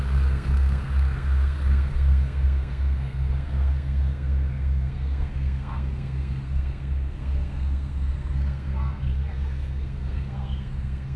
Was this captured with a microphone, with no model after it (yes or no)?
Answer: no